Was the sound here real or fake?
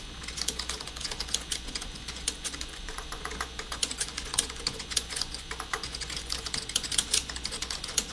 fake